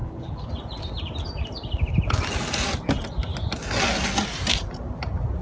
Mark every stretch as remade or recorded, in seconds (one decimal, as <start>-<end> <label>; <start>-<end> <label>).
0.0-0.5 remade; 0.5-5.4 recorded